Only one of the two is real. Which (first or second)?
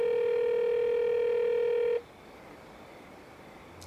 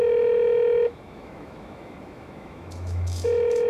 first